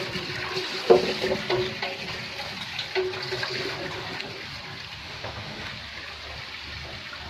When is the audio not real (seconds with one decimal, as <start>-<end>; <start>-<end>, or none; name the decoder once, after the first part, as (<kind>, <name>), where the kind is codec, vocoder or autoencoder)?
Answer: 5.0-5.7 (autoencoder, DAC-VAE)

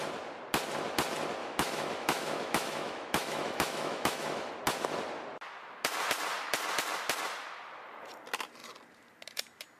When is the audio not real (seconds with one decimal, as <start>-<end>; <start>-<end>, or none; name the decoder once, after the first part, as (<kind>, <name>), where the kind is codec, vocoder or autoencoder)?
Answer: 1.4-4.5 (autoencoder, DAC-VAE)